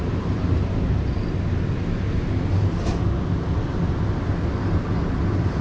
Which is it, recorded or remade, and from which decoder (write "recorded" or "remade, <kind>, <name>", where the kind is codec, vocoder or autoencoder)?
recorded